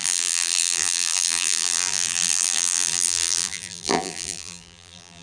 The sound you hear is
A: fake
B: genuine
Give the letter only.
A